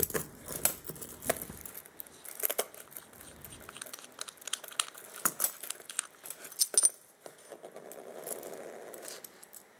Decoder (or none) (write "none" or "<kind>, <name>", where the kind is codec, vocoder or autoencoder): none